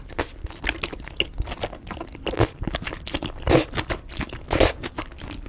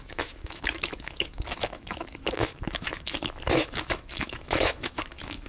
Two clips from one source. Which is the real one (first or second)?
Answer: first